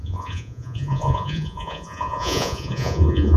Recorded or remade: remade